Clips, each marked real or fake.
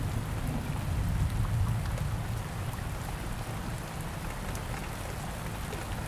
real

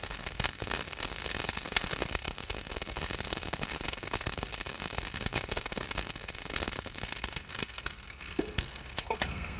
fake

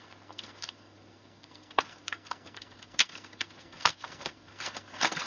fake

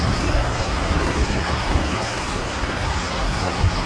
fake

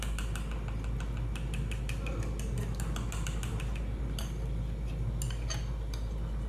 real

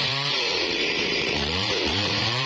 fake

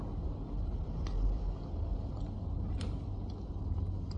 real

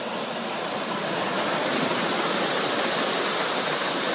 real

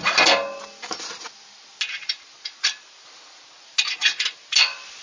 real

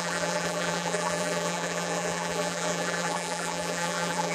fake